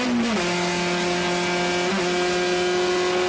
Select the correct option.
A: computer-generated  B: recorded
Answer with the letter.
B